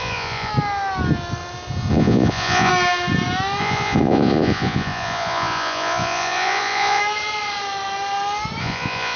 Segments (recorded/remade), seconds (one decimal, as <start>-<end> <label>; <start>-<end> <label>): 0.0-0.5 remade; 0.5-1.9 recorded; 1.9-2.7 remade; 2.7-3.6 recorded; 3.6-7.0 remade; 7.0-8.6 recorded; 8.6-9.2 remade